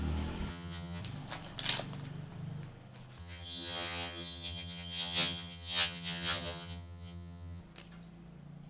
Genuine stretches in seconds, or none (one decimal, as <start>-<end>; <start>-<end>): 0.0-0.5; 1.0-3.2; 7.6-8.7